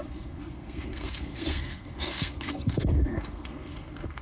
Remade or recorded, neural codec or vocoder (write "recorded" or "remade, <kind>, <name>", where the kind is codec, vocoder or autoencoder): remade, codec, SNAC